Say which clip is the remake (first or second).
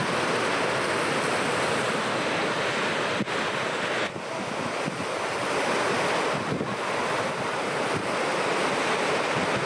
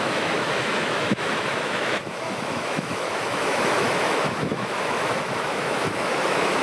second